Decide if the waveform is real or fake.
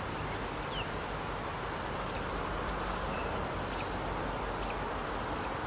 real